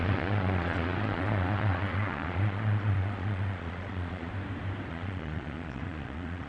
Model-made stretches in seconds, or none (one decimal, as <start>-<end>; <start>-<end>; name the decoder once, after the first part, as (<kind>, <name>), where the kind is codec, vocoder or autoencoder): 0.0-4.3 (vocoder, Vocos); 4.9-6.5